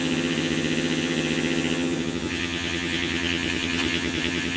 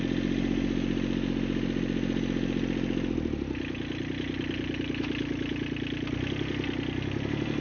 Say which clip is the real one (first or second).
second